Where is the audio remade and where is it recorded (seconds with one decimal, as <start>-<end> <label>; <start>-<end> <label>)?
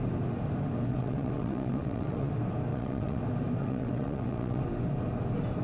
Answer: 0.0-0.9 recorded; 0.9-2.3 remade; 2.3-2.7 recorded; 2.7-3.2 remade; 3.2-3.6 recorded; 3.6-4.6 remade; 4.6-5.6 recorded